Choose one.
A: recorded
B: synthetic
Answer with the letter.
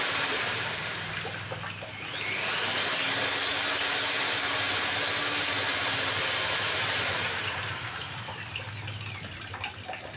A